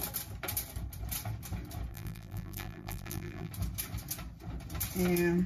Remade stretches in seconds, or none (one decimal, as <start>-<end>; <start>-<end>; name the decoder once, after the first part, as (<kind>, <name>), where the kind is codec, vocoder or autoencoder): 1.9-3.5 (vocoder, BigVGAN v2)